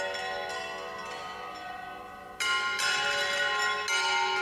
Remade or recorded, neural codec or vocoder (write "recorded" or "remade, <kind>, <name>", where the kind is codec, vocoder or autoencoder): recorded